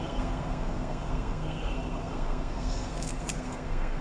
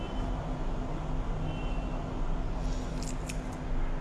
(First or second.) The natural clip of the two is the second